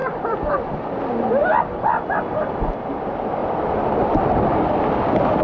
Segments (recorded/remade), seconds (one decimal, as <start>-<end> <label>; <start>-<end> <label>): 0.0-0.5 remade; 0.5-1.4 recorded; 1.4-2.1 remade; 2.1-3.4 recorded; 3.4-5.4 remade

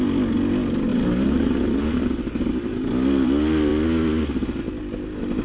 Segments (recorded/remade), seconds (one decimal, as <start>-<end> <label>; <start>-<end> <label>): 0.0-0.9 recorded; 0.9-2.0 remade; 2.0-5.4 recorded

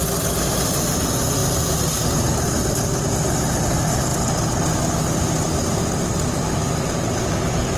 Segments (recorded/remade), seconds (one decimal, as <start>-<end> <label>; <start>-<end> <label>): 0.0-7.8 recorded

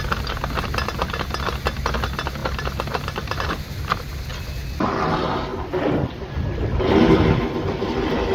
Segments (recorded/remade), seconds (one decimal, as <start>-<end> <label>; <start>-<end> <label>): 0.0-2.4 recorded; 2.4-3.9 remade; 3.9-8.3 recorded

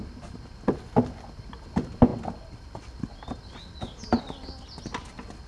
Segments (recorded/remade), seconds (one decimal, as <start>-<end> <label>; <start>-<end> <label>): 0.0-5.5 recorded

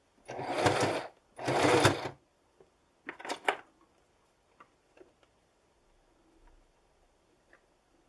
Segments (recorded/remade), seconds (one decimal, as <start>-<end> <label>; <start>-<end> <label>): 0.0-8.1 recorded